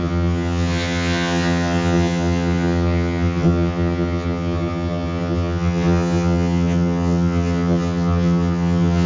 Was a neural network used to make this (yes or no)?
yes